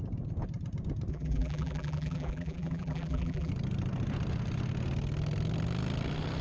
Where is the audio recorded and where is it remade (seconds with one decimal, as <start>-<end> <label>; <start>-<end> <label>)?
0.0-1.1 recorded; 1.1-3.5 remade; 3.5-6.4 recorded

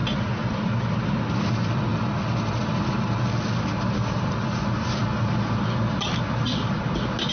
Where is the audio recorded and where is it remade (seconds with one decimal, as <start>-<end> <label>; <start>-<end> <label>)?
0.0-7.3 recorded

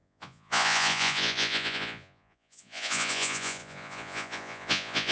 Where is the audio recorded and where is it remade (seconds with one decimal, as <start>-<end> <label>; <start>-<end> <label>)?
0.0-5.1 remade

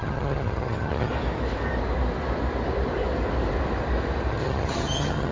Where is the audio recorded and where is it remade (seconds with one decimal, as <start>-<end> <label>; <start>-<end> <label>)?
0.0-1.1 remade; 1.1-4.3 recorded; 4.3-5.3 remade

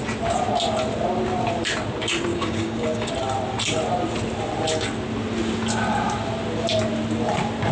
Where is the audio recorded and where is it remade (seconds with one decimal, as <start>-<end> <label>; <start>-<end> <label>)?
0.0-2.3 recorded; 2.3-3.1 remade; 3.1-7.7 recorded

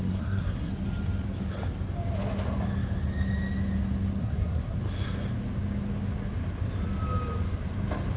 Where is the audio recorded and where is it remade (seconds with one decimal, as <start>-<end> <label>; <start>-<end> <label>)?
0.0-0.7 remade; 0.7-4.2 recorded; 4.2-4.8 remade; 4.8-8.2 recorded

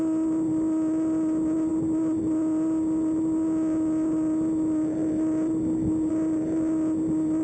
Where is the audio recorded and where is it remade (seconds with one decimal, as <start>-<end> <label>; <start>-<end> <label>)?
0.0-7.4 recorded